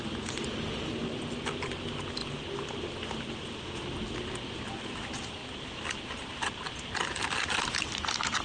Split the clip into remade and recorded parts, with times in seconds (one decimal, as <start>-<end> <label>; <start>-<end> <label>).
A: 0.0-8.4 recorded

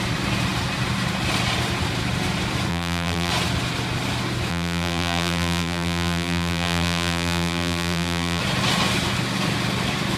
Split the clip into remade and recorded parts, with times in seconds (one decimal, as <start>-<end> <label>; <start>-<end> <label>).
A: 0.0-2.7 recorded; 2.7-3.3 remade; 3.3-4.5 recorded; 4.5-8.4 remade; 8.4-10.2 recorded